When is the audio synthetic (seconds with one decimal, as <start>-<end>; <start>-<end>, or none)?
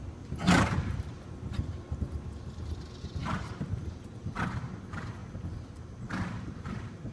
0.0-7.1